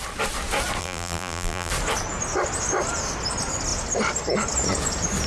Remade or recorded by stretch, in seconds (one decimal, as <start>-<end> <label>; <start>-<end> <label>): 0.0-0.8 recorded; 0.8-1.7 remade; 1.7-5.3 recorded